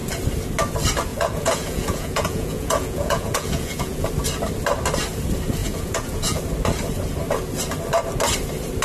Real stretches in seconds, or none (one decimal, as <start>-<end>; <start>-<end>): 0.0-1.1; 4.1-5.6; 6.4-8.8